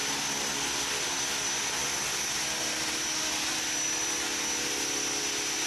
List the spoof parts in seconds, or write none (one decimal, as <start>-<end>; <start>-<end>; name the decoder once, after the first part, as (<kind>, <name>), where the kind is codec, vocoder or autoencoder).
none